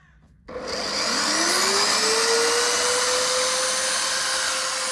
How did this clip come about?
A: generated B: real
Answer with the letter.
B